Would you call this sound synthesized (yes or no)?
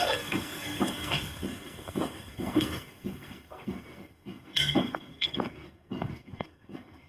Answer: yes